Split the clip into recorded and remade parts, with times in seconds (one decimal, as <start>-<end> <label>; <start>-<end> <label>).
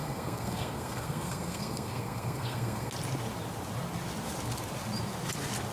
0.0-2.9 remade; 2.9-5.7 recorded